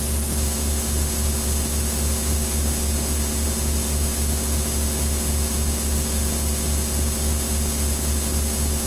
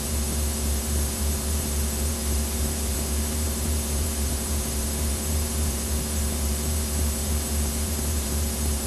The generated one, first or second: second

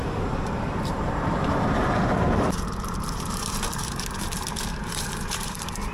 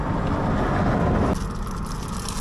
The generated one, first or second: first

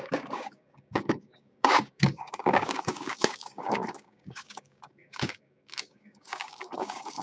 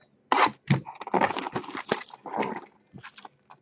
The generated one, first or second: first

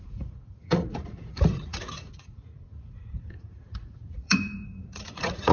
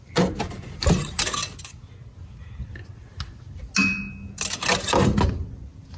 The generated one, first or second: first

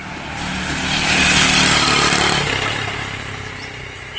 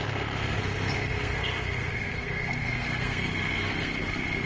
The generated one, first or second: second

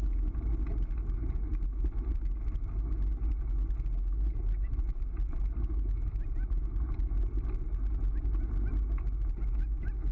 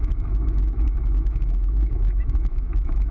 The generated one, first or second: second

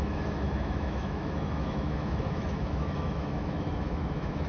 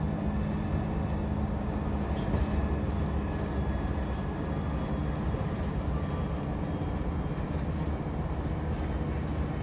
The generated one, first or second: first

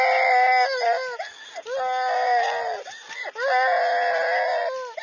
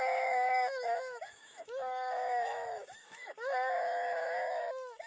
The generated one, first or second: second